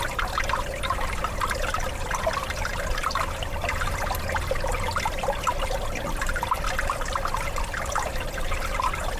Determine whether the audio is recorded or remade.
remade